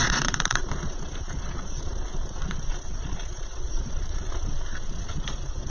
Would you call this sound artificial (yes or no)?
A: yes